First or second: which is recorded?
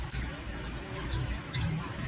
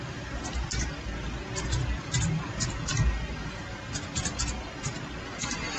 second